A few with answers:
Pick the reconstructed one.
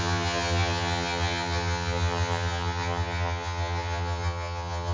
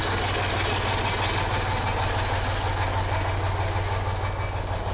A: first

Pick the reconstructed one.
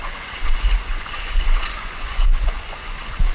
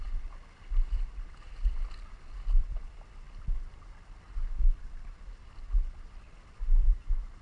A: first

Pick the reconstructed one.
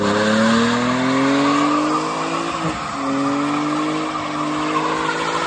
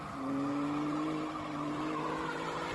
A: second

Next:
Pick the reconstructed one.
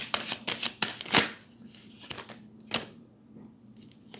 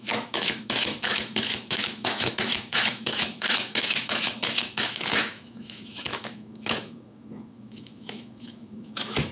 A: second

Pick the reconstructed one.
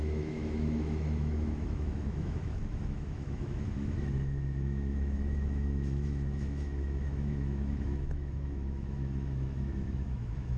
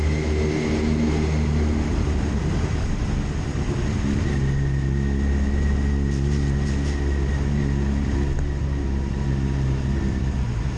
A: first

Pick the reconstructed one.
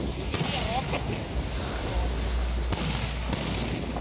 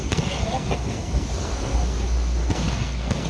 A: second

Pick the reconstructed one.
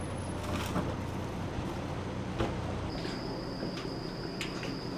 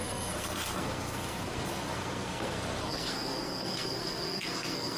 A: second